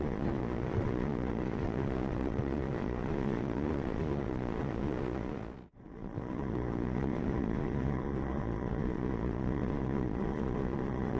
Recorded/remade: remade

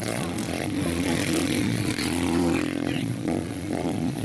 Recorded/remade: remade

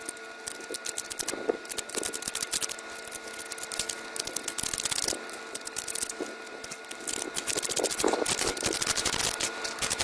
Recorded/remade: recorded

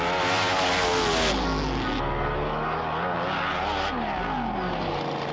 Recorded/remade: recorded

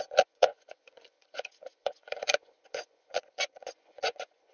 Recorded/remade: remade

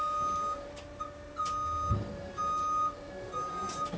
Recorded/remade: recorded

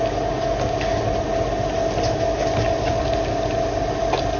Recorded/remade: recorded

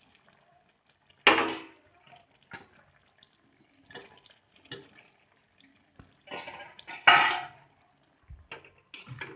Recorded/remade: recorded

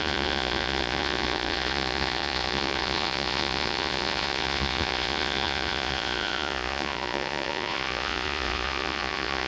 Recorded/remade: remade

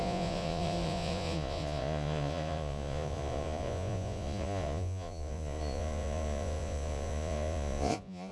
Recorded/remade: remade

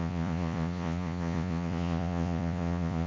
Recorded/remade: remade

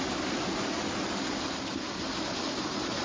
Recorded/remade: recorded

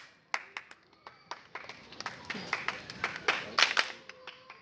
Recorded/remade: recorded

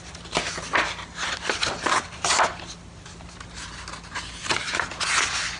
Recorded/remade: recorded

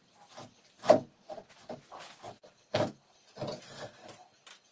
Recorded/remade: recorded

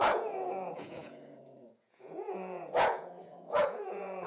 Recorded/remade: remade